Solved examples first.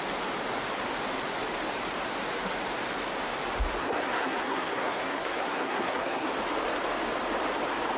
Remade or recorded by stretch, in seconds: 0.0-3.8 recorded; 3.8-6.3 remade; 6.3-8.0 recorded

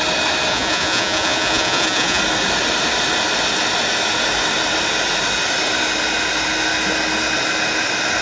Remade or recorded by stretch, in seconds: 0.0-0.5 recorded; 0.5-2.2 remade; 2.2-8.2 recorded

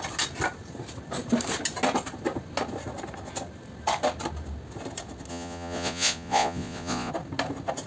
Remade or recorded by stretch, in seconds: 0.0-5.3 recorded; 5.3-7.1 remade; 7.1-7.9 recorded